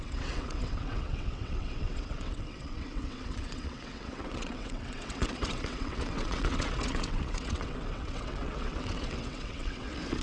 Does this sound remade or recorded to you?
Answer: remade